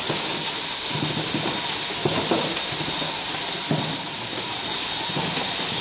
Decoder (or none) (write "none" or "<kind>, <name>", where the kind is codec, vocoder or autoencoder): none